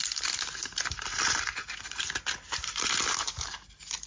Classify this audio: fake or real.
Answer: real